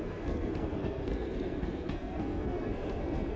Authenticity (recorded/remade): remade